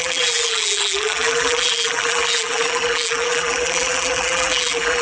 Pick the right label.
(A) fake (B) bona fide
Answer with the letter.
A